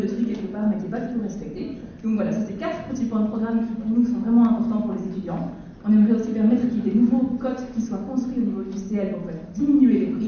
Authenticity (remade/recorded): recorded